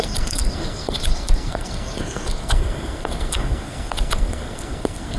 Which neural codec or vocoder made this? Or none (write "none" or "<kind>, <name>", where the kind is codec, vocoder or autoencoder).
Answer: codec, SNAC